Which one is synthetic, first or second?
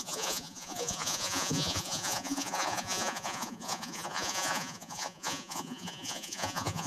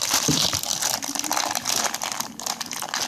first